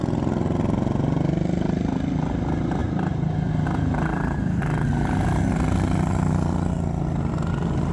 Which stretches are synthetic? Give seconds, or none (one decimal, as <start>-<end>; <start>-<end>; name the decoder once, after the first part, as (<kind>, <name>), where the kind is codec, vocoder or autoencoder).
none